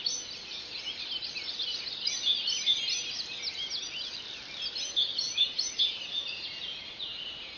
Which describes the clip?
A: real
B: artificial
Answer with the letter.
A